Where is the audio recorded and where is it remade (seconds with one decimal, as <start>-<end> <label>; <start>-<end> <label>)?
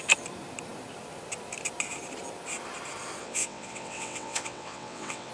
0.0-3.2 recorded; 3.2-5.3 remade